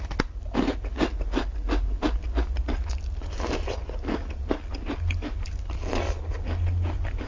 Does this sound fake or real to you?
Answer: real